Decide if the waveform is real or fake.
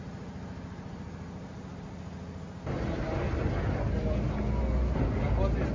real